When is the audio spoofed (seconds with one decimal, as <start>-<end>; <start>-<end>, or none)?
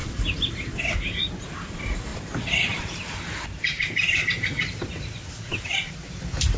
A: none